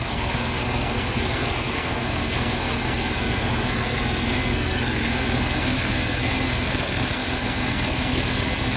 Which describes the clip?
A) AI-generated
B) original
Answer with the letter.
A